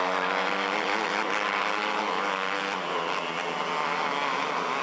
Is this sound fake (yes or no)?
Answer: no